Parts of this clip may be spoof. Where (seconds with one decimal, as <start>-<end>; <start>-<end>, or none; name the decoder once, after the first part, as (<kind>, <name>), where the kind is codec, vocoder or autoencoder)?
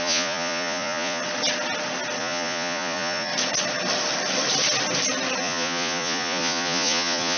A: 0.0-1.2 (vocoder, Vocos); 2.2-3.3; 5.4-7.4